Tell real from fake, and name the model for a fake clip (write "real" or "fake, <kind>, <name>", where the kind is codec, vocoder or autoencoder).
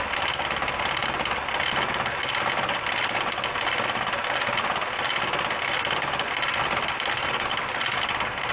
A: real